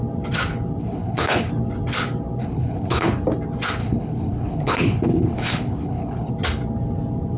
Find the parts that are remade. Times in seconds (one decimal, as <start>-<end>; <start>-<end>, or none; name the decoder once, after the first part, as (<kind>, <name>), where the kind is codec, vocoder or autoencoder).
0.8-1.5 (codec, HILCodec); 2.4-3.1; 3.8-6.3